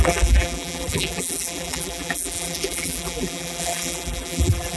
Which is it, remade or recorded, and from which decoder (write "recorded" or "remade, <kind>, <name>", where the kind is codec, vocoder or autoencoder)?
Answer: remade, vocoder, BigVGAN v2